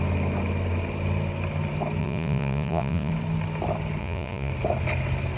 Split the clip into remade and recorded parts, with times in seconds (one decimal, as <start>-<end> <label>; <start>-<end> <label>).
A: 0.0-2.0 recorded; 2.0-3.1 remade; 3.1-4.0 recorded; 4.0-4.5 remade; 4.5-5.4 recorded

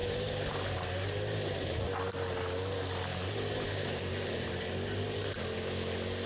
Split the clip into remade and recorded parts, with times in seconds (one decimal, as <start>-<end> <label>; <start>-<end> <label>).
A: 0.0-1.8 remade; 1.8-3.1 recorded; 3.1-5.4 remade; 5.4-6.3 recorded

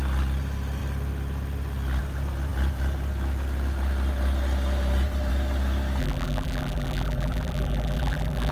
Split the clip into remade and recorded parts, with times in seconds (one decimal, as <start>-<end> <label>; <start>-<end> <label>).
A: 0.0-6.0 recorded; 6.0-8.5 remade

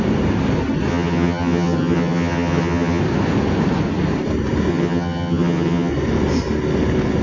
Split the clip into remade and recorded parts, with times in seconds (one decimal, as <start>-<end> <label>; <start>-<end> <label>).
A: 0.0-0.9 recorded; 0.9-3.0 remade; 3.0-4.7 recorded; 4.7-5.9 remade; 5.9-7.2 recorded

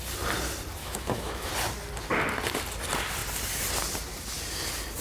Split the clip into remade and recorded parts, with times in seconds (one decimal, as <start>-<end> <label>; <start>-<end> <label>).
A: 0.0-0.8 recorded; 0.8-1.5 remade; 1.5-5.0 recorded

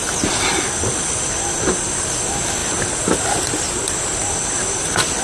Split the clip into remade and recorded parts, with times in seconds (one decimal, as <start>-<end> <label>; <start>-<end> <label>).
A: 0.0-5.2 recorded

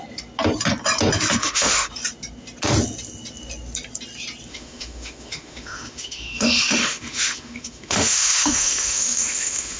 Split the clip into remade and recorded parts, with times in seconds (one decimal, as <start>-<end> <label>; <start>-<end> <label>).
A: 0.0-1.4 recorded; 1.4-1.9 remade; 1.9-4.5 recorded; 4.5-9.8 remade